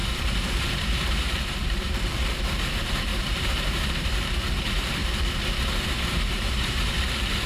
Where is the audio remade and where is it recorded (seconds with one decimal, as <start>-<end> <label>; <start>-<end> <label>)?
0.0-0.6 recorded; 0.6-5.0 remade; 5.0-5.6 recorded; 5.6-7.5 remade